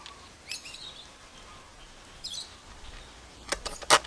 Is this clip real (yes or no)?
yes